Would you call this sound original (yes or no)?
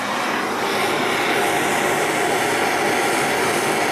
yes